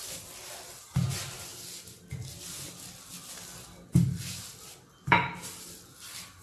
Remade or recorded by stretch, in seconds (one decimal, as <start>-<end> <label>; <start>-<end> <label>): 0.0-6.4 recorded